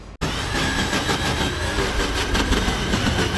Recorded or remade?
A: recorded